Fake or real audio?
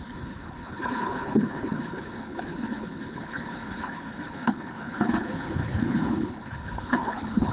fake